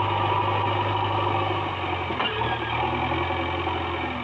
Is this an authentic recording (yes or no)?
yes